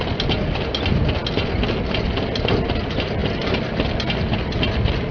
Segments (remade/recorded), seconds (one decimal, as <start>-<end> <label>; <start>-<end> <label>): 0.0-5.1 recorded